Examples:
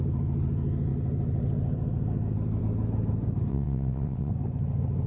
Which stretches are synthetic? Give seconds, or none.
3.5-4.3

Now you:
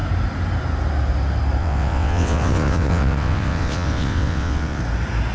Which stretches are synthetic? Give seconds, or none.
1.6-4.8

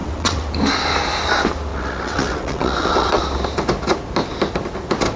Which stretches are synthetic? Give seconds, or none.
0.0-0.5; 1.7-3.2